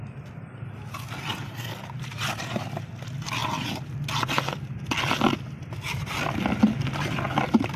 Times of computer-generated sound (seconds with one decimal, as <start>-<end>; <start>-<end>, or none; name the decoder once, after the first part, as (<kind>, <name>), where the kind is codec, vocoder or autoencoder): 1.3-2.8 (vocoder, BigVGAN v2)